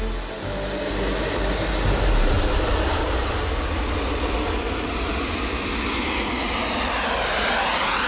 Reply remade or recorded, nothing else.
recorded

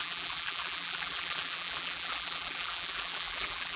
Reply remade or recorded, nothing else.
remade